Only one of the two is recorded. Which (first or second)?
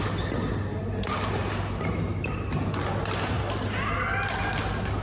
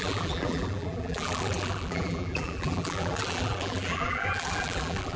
first